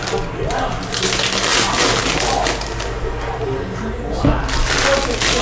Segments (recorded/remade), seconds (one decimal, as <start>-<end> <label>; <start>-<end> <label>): 0.0-5.4 recorded